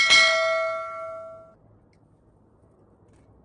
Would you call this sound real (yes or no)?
yes